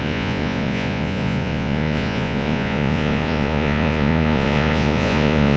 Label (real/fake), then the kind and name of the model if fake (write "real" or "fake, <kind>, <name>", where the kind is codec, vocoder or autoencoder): fake, vocoder, Vocos